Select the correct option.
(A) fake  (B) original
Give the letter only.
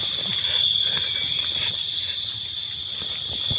B